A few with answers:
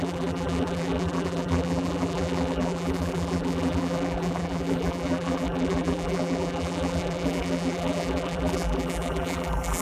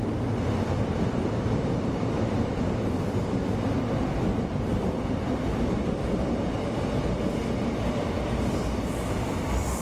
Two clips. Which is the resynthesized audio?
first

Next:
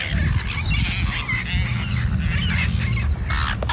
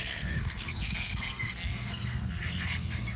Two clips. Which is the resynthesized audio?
second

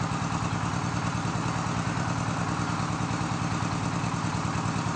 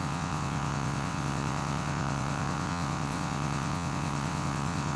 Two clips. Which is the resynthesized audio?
second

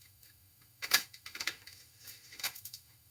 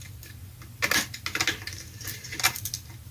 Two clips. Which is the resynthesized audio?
first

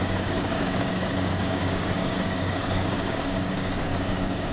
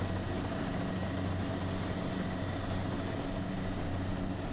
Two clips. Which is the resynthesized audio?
first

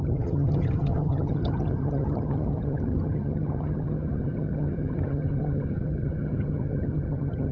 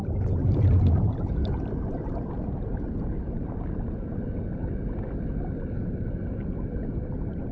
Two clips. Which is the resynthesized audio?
first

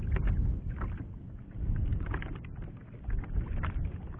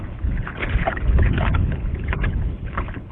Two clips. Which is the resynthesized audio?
second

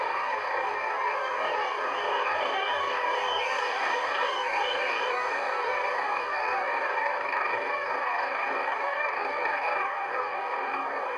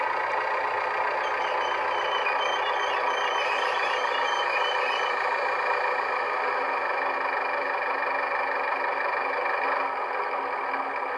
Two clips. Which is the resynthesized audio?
first